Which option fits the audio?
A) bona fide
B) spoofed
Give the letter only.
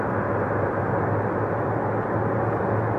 A